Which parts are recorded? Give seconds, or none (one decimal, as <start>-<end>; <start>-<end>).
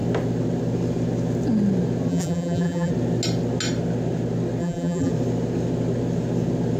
0.0-2.1; 2.9-4.6; 5.1-6.8